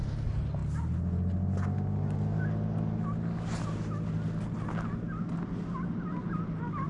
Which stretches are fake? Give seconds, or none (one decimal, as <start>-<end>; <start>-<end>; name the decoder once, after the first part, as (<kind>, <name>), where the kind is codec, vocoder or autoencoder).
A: none